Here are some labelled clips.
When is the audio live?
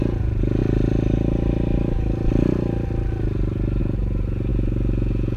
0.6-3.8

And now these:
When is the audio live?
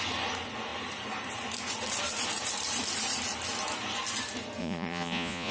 0.0-4.6